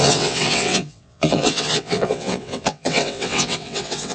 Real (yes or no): no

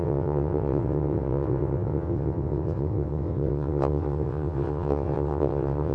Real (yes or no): no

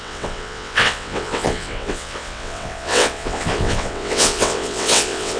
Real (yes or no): no